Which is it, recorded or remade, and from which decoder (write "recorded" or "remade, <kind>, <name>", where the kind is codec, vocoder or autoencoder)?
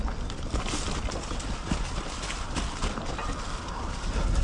recorded